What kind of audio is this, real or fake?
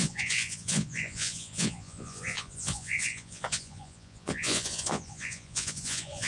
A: fake